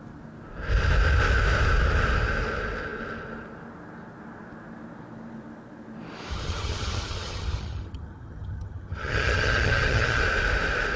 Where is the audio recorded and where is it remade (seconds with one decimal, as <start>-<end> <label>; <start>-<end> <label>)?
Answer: 0.0-6.3 recorded; 6.3-10.2 remade; 10.2-11.0 recorded